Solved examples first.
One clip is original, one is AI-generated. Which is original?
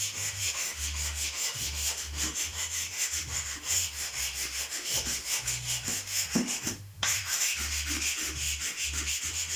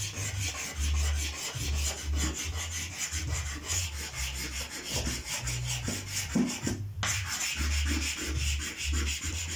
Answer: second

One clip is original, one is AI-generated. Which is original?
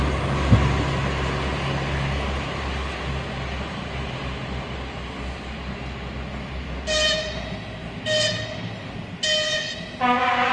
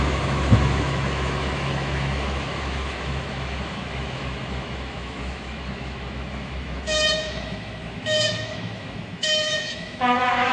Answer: first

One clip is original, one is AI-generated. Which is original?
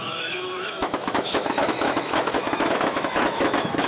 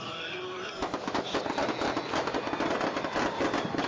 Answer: second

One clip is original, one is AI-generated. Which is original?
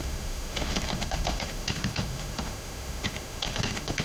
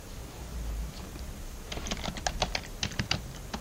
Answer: second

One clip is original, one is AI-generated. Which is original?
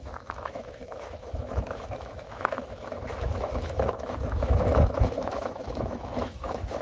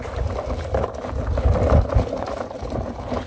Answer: second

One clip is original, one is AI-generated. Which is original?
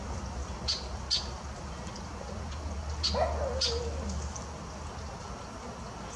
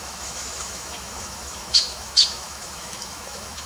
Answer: first